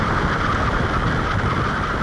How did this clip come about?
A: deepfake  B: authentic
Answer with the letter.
B